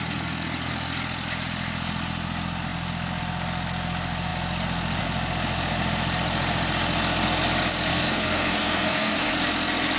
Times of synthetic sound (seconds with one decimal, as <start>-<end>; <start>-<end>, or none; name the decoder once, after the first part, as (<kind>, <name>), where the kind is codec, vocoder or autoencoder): 7.9-9.3 (codec, SNAC)